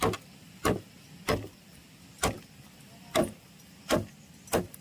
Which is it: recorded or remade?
remade